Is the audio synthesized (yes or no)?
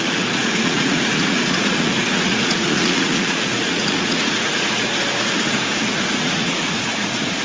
yes